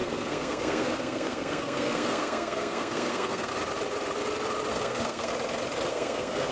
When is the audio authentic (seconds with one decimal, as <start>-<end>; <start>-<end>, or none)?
3.5-4.7; 5.3-5.9